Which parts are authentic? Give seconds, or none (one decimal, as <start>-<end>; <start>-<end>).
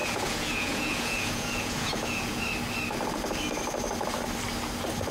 2.4-5.1